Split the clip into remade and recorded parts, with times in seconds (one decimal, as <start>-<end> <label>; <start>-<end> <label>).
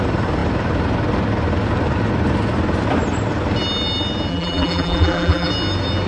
0.0-4.3 recorded; 4.3-5.5 remade; 5.5-6.1 recorded